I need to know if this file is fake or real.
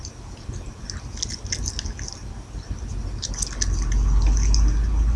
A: real